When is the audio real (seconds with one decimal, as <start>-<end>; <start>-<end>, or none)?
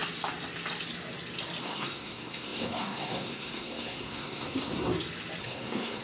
0.0-1.6; 4.9-5.4